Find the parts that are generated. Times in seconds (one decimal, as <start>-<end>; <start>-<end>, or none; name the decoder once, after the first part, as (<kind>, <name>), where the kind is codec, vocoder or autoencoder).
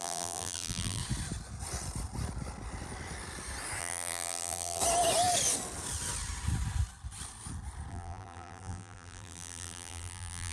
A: 0.0-1.0 (vocoder, BigVGAN v2); 3.8-4.8; 7.9-10.5